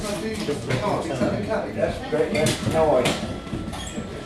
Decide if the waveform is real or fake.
real